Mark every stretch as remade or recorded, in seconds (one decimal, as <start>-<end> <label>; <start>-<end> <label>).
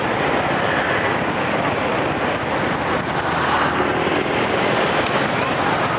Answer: 0.0-6.0 recorded